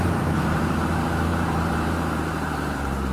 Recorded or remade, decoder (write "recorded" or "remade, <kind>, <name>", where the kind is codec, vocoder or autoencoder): remade, vocoder, BigVGAN v2